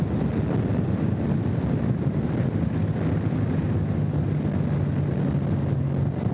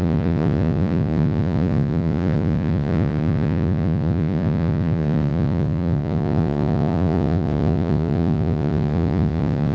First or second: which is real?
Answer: first